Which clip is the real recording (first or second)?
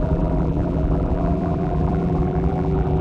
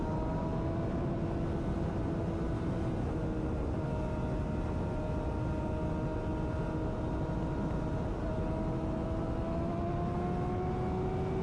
second